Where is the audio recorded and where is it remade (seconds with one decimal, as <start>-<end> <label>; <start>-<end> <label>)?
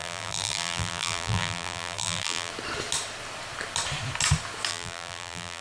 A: 0.0-2.5 remade; 2.5-4.7 recorded; 4.7-5.6 remade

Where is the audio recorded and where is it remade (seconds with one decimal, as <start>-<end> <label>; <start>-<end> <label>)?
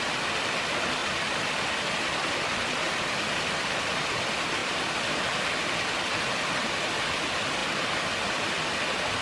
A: 0.0-1.0 recorded; 1.0-1.8 remade; 1.8-9.2 recorded